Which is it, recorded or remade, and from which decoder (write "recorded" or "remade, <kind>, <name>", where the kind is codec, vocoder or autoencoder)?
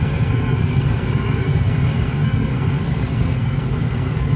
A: remade, codec, SNAC